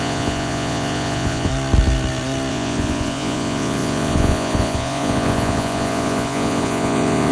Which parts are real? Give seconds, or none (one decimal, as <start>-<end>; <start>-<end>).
1.5-2.5